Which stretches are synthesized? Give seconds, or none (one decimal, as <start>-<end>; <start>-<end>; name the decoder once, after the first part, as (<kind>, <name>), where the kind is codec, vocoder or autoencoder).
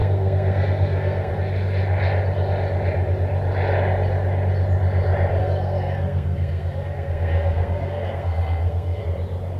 0.0-1.3 (codec, SNAC); 5.4-9.0